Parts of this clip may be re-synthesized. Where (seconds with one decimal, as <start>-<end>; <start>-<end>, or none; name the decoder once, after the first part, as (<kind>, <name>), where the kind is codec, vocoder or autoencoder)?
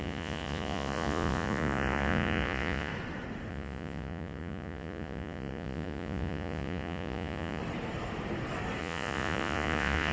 0.0-2.9 (vocoder, Vocos); 3.5-7.6; 8.8-10.1